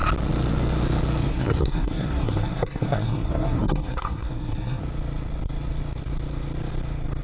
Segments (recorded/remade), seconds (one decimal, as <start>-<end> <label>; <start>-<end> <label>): 0.0-1.3 recorded; 1.3-4.8 remade; 4.8-7.2 recorded